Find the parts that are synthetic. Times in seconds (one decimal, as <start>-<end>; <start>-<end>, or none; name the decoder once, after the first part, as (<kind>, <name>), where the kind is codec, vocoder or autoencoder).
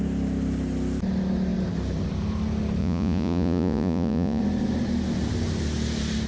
2.8-4.4 (vocoder, Vocos)